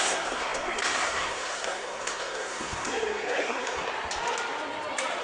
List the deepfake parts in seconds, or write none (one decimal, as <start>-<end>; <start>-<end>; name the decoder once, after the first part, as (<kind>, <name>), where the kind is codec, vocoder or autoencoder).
0.0-3.9 (codec, SNAC)